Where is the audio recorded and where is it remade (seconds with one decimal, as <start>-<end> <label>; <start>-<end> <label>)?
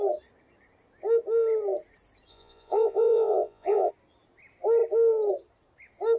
0.0-2.3 recorded; 2.3-3.9 remade; 3.9-6.2 recorded